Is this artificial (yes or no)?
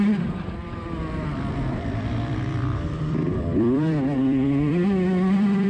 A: yes